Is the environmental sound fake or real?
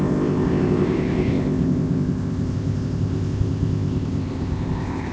fake